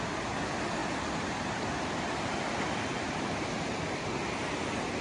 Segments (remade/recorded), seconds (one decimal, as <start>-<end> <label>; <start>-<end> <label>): 0.0-5.0 recorded